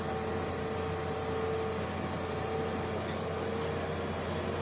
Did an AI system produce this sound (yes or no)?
no